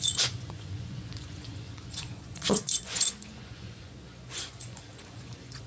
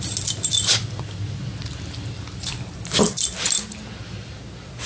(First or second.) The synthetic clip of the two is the first